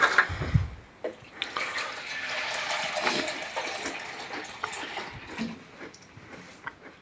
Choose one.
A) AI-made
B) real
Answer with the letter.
B